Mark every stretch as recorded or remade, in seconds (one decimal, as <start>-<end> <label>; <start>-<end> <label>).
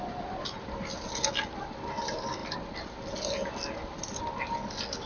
0.0-5.1 recorded